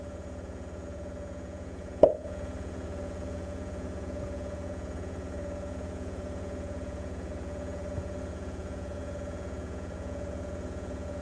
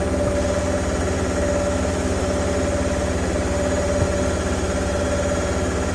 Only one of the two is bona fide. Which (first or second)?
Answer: second